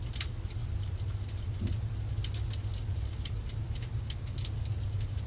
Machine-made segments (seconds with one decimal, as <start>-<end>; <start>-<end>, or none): none